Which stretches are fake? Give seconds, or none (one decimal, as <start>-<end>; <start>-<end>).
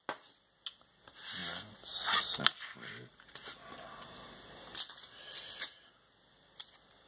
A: none